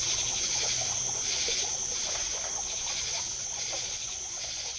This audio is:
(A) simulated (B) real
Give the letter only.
A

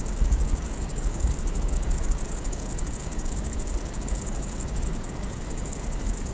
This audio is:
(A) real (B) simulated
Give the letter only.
B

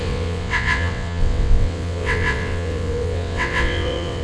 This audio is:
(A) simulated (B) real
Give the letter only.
A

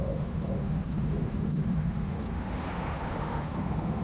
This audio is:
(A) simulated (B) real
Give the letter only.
A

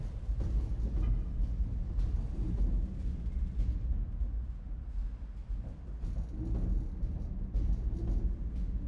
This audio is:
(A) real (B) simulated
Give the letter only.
A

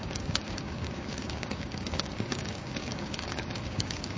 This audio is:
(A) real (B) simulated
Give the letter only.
B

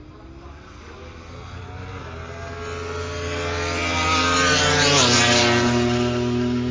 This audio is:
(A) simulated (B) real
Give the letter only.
B